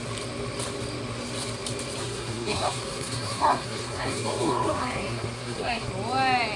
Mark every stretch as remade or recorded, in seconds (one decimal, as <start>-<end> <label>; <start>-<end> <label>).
0.0-2.0 recorded; 2.0-5.9 remade; 5.9-6.6 recorded